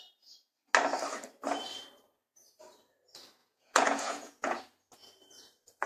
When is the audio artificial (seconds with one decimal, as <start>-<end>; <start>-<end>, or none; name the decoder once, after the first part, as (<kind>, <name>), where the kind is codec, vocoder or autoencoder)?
3.4-4.6 (vocoder, Vocos)